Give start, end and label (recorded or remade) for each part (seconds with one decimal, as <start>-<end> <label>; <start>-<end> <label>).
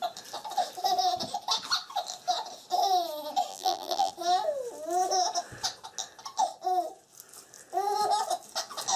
0.0-3.5 recorded; 3.5-4.1 remade; 4.1-9.0 recorded